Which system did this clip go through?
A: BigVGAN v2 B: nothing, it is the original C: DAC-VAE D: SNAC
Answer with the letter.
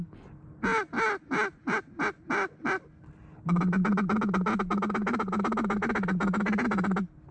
B